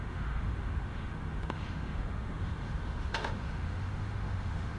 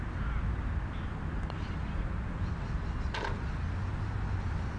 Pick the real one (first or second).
second